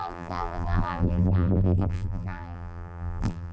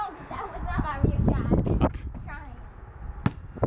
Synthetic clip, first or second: first